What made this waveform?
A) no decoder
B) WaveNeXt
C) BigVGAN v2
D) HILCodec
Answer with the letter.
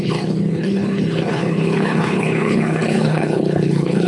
D